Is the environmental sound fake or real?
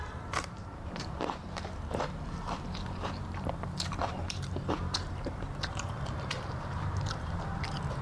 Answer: fake